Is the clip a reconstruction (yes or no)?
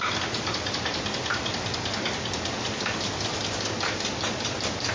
no